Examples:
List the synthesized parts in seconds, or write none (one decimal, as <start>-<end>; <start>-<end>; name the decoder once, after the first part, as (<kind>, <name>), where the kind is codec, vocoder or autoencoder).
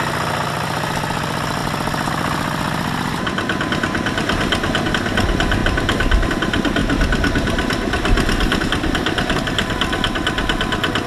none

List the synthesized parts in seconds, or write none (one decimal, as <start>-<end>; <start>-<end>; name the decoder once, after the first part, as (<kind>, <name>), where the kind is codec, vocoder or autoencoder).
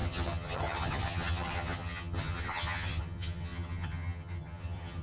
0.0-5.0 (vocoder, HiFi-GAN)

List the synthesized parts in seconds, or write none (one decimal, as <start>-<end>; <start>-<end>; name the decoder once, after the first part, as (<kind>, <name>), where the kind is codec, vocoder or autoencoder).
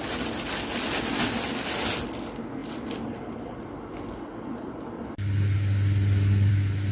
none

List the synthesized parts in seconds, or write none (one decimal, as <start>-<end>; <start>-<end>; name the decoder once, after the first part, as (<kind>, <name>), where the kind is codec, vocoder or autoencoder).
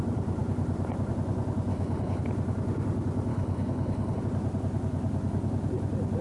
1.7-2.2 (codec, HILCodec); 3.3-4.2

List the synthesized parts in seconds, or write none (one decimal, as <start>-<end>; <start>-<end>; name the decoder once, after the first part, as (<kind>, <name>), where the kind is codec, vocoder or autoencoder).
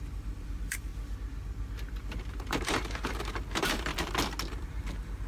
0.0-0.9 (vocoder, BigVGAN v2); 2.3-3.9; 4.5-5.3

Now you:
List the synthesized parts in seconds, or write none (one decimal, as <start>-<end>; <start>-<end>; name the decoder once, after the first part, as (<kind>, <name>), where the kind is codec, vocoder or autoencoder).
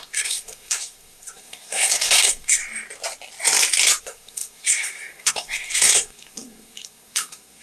0.0-2.6 (codec, SNAC); 4.0-7.6